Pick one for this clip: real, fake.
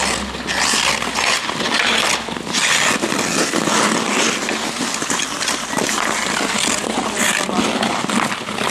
real